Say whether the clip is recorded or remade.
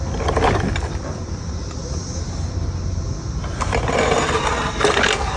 recorded